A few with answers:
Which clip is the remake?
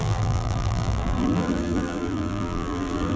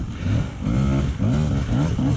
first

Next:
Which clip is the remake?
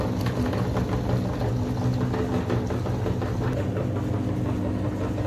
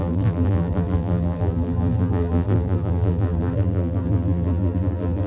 second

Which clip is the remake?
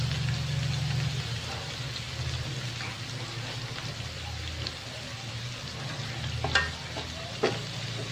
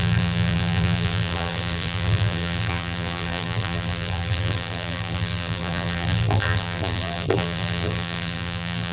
second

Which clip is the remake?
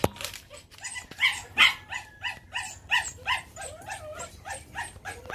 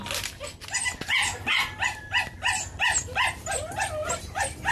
first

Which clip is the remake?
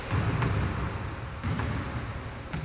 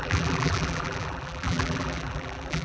second